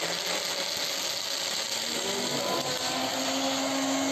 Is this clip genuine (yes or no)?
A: yes